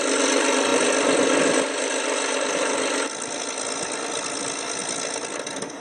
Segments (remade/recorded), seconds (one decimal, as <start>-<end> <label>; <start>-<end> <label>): 0.0-0.7 recorded; 0.7-3.4 remade; 3.4-5.8 recorded